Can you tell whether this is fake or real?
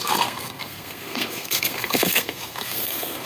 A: fake